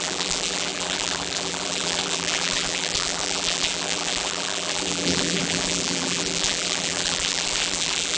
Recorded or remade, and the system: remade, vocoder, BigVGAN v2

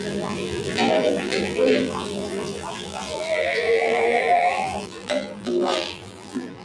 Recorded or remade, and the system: remade, vocoder, BigVGAN v2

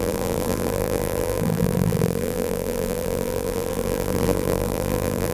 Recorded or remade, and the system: remade, vocoder, BigVGAN v2